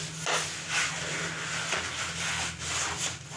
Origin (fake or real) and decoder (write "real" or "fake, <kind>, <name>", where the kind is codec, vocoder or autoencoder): real